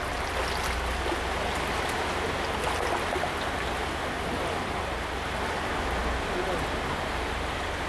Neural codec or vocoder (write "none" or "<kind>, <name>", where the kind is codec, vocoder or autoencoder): none